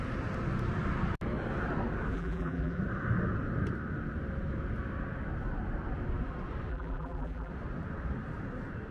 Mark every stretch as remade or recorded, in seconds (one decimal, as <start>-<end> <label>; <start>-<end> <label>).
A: 0.0-2.1 recorded; 2.1-2.8 remade; 2.8-6.7 recorded; 6.7-7.5 remade; 7.5-8.9 recorded

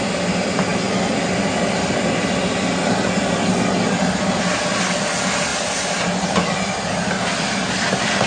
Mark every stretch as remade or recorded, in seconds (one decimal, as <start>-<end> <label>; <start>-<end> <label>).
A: 0.0-8.3 recorded